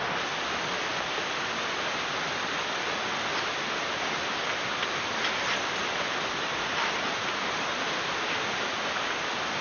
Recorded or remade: recorded